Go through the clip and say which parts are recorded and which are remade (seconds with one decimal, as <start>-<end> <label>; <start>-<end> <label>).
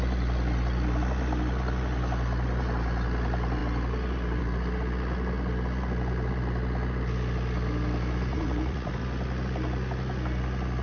0.0-8.3 recorded; 8.3-9.0 remade; 9.0-10.8 recorded